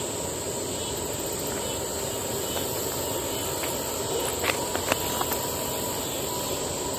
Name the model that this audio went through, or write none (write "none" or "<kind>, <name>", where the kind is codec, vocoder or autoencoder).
none